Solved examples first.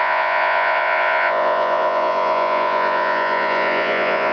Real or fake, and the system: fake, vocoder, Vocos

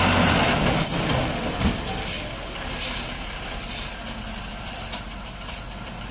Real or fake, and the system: real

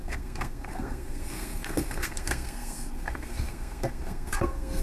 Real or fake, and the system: fake, codec, SNAC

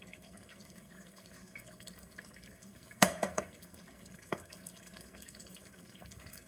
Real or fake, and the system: fake, codec, SNAC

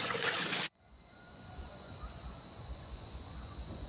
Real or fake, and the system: fake, vocoder, Vocos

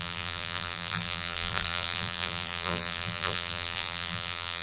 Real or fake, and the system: fake, vocoder, BigVGAN v2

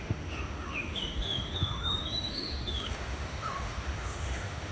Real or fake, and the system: fake, autoencoder, DAC-VAE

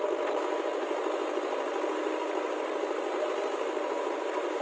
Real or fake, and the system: real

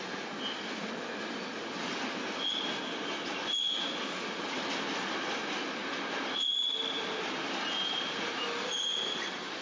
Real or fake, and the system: real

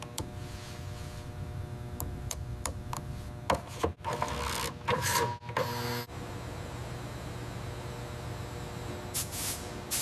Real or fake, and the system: real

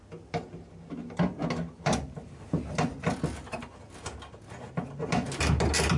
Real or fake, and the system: real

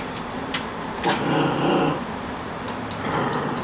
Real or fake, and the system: fake, vocoder, BigVGAN v2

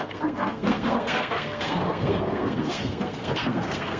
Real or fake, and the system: fake, codec, SNAC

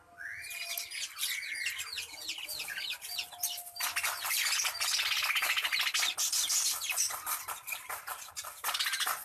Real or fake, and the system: real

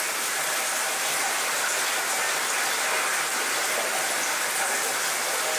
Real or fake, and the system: real